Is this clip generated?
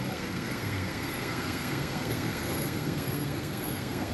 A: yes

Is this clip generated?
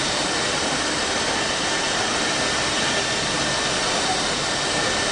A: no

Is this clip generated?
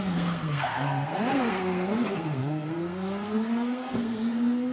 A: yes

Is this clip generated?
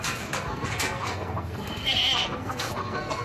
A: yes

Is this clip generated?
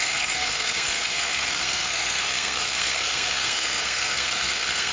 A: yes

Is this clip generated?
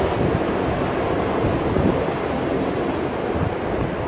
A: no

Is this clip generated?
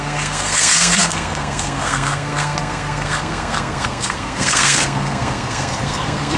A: yes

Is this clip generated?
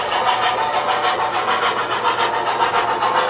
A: no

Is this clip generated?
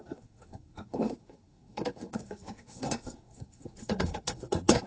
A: yes